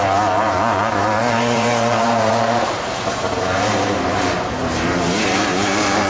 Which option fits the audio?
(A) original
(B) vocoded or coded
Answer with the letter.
B